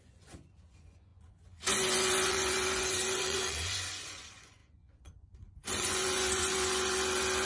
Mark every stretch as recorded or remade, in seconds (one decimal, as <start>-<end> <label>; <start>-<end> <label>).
0.0-7.5 remade